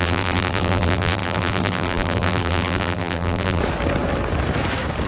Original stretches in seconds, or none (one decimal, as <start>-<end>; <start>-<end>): 3.6-5.1